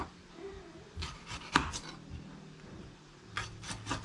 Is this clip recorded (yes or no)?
yes